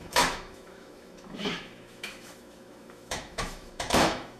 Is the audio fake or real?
fake